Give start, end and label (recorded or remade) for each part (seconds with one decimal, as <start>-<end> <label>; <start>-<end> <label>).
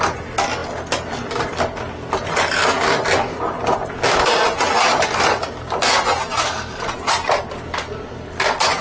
0.0-8.8 recorded